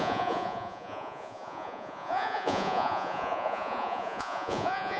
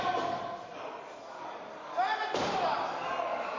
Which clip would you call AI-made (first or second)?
first